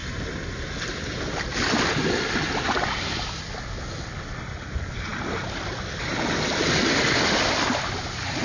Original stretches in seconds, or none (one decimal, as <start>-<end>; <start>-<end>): 0.0-8.4